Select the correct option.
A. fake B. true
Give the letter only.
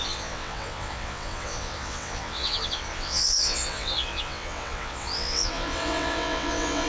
A